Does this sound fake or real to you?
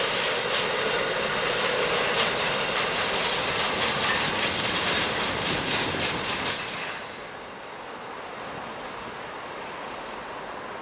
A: real